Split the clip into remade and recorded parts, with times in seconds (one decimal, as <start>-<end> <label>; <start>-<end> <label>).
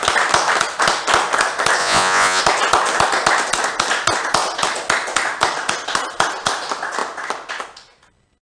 0.0-1.8 recorded; 1.8-2.4 remade; 2.4-8.6 recorded